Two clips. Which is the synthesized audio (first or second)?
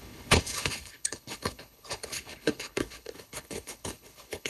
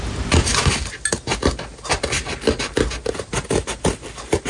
first